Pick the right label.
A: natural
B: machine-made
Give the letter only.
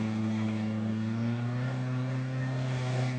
B